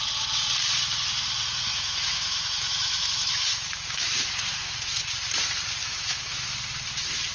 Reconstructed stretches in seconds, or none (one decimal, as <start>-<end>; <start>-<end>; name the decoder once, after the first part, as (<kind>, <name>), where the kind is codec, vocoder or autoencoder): 1.7-5.0 (autoencoder, DAC-VAE); 5.8-6.5